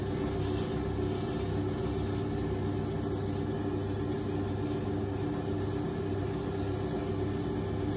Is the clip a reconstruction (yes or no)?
no